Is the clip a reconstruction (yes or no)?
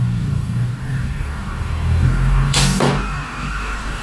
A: yes